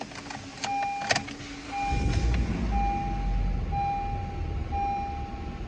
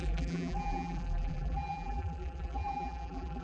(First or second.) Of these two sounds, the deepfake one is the second